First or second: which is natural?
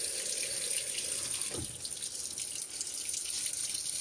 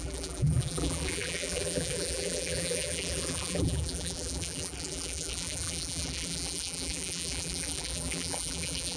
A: first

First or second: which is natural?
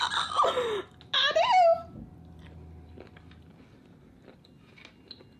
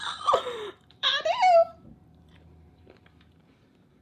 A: first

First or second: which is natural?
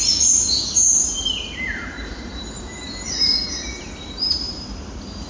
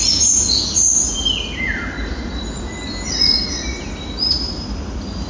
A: second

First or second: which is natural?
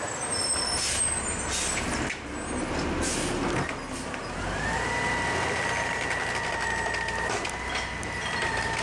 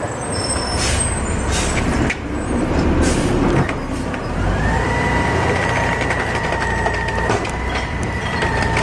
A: first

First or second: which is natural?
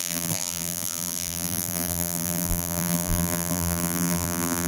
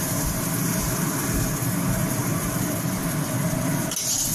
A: second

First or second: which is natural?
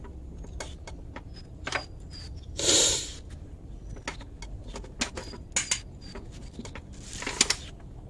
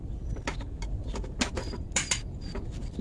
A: first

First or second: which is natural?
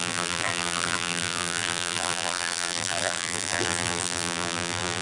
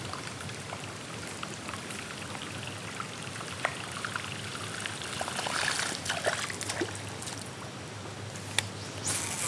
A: second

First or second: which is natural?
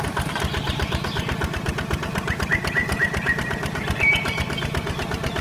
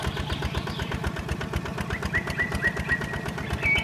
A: second